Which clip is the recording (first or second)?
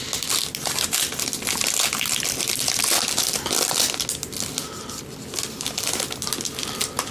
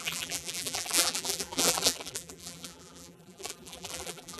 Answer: first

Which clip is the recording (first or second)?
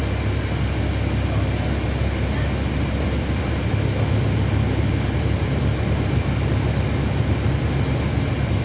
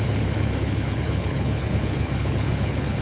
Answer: first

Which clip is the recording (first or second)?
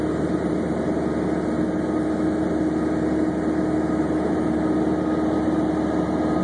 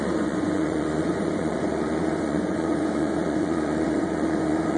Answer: first